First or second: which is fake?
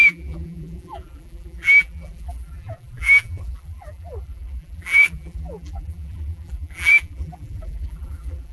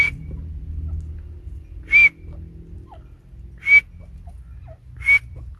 first